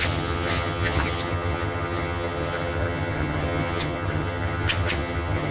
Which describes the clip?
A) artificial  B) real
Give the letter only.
A